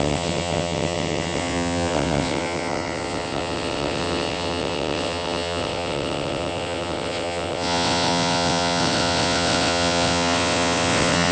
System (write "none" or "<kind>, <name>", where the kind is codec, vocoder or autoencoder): vocoder, WaveNeXt